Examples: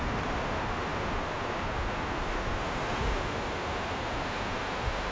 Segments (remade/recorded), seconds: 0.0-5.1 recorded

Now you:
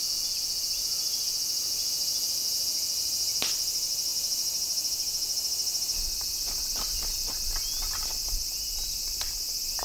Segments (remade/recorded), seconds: 0.0-9.8 recorded

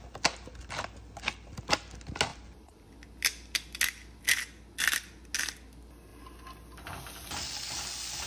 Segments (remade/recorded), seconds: 0.0-8.3 recorded

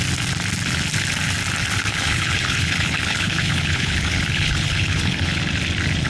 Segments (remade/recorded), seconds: 0.0-1.9 recorded; 1.9-5.4 remade; 5.4-6.1 recorded

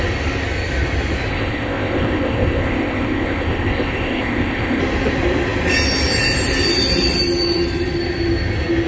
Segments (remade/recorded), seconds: 0.0-1.3 recorded; 1.3-4.8 remade; 4.8-8.9 recorded